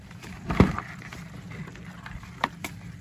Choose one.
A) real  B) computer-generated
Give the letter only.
B